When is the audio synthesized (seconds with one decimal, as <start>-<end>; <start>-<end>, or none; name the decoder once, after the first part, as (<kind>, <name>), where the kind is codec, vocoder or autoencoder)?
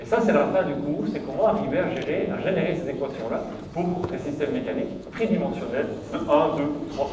2.2-2.8 (vocoder, Vocos); 3.9-5.1